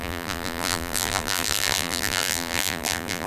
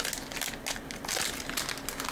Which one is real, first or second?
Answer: second